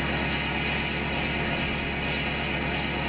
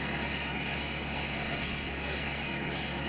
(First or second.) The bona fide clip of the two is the first